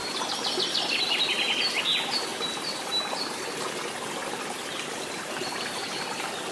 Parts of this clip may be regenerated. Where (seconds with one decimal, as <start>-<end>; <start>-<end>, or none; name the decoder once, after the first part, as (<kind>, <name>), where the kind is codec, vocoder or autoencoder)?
none